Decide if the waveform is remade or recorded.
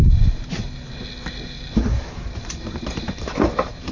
recorded